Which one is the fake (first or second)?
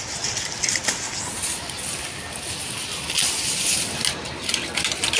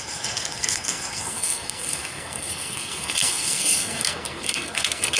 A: second